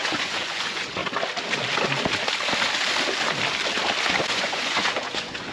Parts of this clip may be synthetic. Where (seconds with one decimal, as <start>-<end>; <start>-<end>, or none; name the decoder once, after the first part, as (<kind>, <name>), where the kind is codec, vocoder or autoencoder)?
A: 0.0-1.0 (vocoder, Vocos); 4.3-5.5